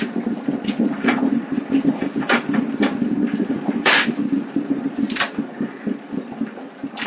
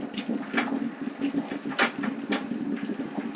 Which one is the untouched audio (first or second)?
second